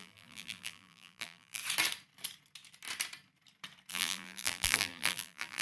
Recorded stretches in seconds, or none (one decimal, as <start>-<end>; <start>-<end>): 1.6-3.9